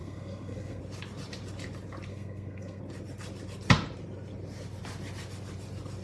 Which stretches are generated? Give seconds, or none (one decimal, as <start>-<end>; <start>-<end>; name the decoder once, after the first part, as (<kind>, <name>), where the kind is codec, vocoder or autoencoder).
0.0-0.8 (codec, SNAC); 2.1-2.8